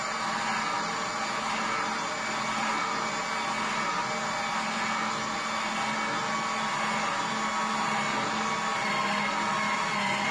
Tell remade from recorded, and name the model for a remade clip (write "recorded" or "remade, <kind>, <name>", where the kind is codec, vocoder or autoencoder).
recorded